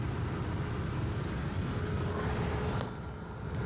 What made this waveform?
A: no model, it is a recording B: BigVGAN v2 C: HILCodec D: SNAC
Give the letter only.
A